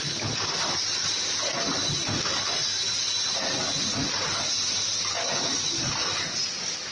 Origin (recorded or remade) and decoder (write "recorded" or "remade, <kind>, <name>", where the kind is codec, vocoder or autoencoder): recorded